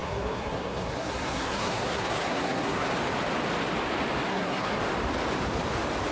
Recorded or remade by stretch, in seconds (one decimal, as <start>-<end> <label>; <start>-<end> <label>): 0.0-2.9 remade; 2.9-4.3 recorded; 4.3-4.8 remade; 4.8-6.1 recorded